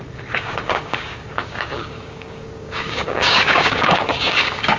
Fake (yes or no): yes